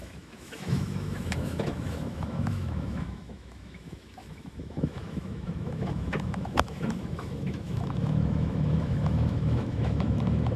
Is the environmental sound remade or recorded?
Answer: remade